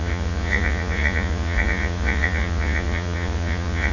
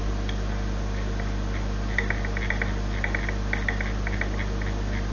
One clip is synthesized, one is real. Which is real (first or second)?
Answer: second